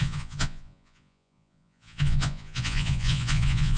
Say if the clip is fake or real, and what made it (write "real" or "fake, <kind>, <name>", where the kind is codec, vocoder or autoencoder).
fake, vocoder, Vocos